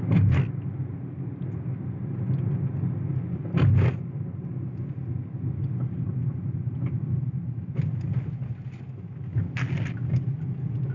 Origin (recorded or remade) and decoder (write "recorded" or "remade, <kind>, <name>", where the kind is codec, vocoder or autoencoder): recorded